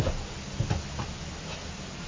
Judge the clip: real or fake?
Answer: real